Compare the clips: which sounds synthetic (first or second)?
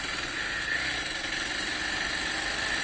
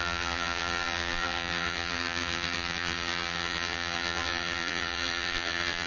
second